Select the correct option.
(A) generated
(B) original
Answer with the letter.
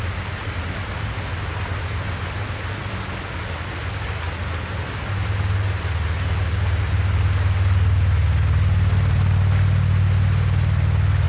B